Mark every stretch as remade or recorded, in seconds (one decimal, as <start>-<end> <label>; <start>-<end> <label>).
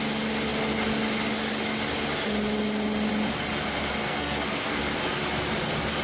0.0-4.0 recorded; 4.0-4.8 remade; 4.8-6.0 recorded